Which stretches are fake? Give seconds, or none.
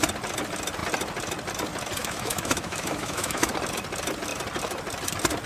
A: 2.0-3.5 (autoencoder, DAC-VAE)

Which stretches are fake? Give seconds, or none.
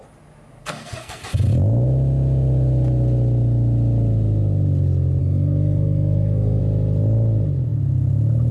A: 0.6-1.2 (codec, SNAC); 5.2-6.6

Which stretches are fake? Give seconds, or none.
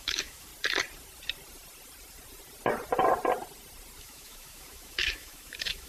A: 0.0-0.5 (autoencoder, DAC-VAE); 4.0-5.9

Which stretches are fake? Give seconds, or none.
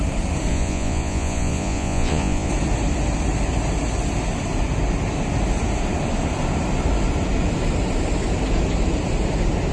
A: 0.5-2.5 (vocoder, Vocos)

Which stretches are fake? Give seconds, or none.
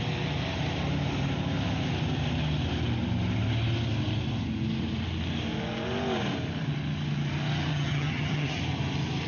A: 7.7-8.6 (vocoder, HiFi-GAN)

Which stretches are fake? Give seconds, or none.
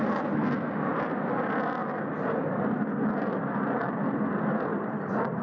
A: 4.7-5.4 (vocoder, BigVGAN v2)